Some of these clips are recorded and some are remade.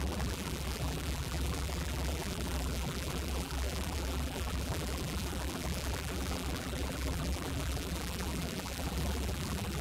remade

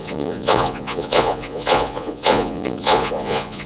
remade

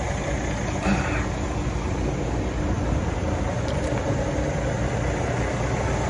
recorded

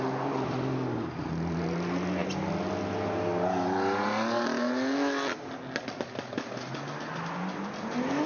recorded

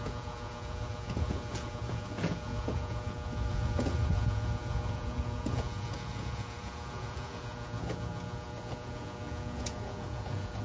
remade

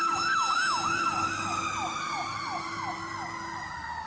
recorded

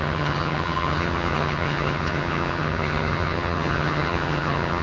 remade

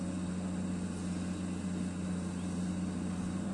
recorded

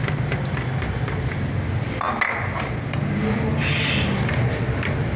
recorded